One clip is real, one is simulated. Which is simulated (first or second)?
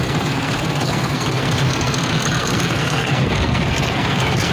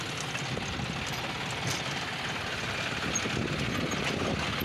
first